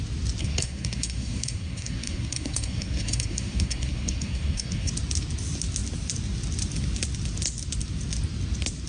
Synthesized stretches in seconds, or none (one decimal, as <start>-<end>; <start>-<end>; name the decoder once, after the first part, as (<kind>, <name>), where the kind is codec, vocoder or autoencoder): 0.4-4.9 (codec, SNAC)